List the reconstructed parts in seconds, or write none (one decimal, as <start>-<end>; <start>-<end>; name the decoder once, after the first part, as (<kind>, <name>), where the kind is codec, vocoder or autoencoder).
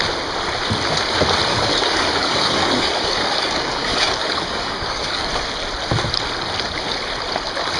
1.5-5.3 (codec, DAC)